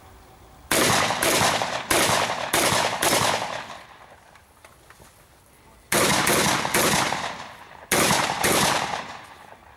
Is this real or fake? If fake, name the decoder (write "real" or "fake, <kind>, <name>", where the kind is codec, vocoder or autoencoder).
real